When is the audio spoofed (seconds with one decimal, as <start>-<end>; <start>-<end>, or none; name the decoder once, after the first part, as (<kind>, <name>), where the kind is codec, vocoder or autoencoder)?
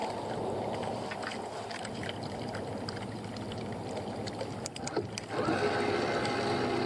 none